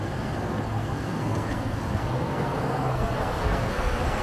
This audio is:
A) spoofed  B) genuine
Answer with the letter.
A